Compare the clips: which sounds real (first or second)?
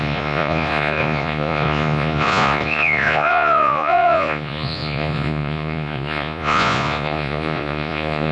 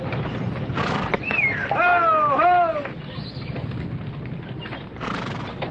second